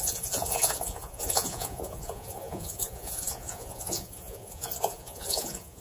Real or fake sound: fake